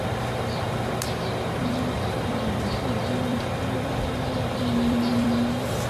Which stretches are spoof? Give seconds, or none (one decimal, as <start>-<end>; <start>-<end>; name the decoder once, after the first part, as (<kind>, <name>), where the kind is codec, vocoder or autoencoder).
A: 0.0-5.9 (vocoder, BigVGAN v2)